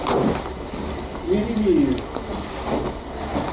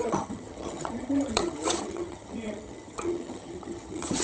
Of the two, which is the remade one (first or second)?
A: second